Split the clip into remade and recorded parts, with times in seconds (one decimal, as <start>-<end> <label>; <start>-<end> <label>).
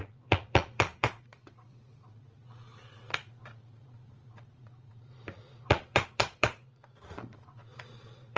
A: 0.0-8.4 remade